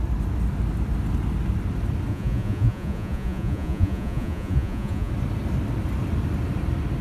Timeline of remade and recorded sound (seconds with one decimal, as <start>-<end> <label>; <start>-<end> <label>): 0.0-2.1 recorded; 2.1-5.1 remade; 5.1-7.0 recorded

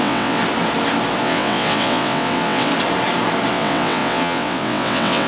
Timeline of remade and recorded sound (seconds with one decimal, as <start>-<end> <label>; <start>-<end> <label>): 0.0-0.4 remade; 0.4-1.2 recorded; 1.2-2.7 remade; 2.7-3.5 recorded; 3.5-5.3 remade